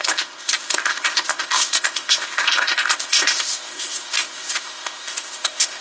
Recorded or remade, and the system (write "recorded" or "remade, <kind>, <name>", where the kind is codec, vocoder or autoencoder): remade, codec, ZipCodec